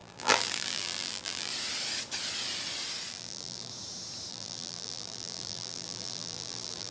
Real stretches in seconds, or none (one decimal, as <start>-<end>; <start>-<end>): 1.5-3.1; 3.7-4.3